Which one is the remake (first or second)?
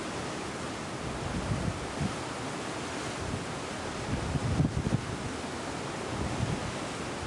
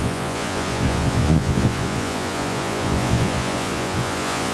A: second